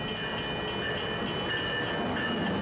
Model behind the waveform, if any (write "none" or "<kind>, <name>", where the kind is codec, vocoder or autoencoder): none